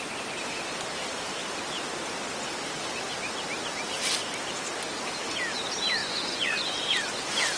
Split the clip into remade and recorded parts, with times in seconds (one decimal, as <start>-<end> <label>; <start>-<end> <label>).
0.0-6.0 recorded; 6.0-7.1 remade; 7.1-7.6 recorded